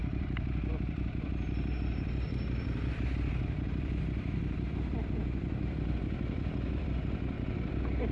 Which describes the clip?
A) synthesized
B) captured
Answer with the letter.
A